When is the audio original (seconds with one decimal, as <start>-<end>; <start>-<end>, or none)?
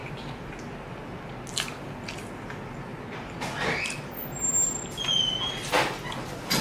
0.0-6.6